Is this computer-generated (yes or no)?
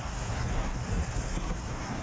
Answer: yes